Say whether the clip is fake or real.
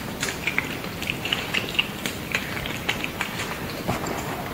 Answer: fake